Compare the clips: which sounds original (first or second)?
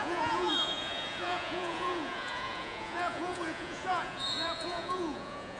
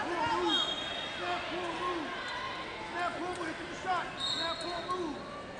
second